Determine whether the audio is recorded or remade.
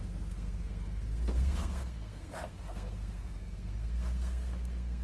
remade